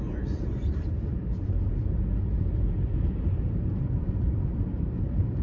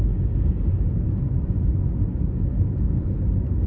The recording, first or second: second